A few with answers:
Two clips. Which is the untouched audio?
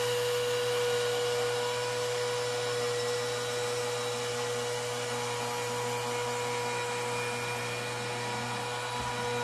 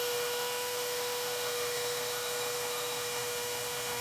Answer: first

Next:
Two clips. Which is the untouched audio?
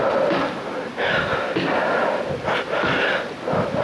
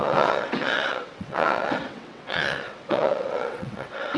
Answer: first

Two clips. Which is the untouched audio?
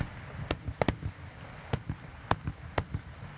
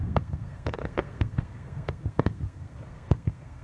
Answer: first